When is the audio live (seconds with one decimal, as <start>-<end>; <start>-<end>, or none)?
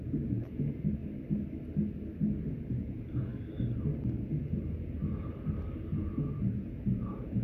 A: 1.0-2.5; 3.3-4.2; 5.0-5.9